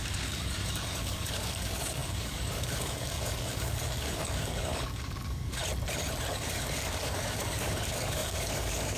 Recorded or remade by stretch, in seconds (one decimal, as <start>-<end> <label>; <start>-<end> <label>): 0.0-5.6 remade; 5.6-6.3 recorded; 6.3-9.0 remade